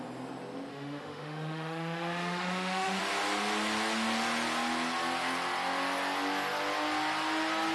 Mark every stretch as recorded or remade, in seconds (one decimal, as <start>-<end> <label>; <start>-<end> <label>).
0.0-0.7 recorded; 0.7-3.0 remade; 3.0-7.7 recorded